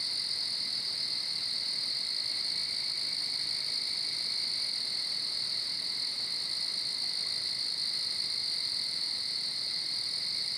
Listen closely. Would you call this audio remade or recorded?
recorded